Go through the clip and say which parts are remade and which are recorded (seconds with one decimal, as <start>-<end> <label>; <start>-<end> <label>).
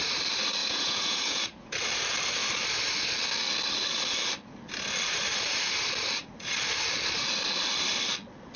0.0-0.6 recorded; 0.6-1.7 remade; 1.7-8.6 recorded